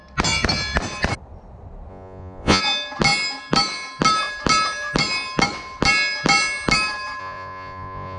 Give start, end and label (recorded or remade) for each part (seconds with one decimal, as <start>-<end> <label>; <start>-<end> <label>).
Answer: 0.0-1.9 recorded; 1.9-2.6 remade; 2.6-7.2 recorded; 7.2-8.2 remade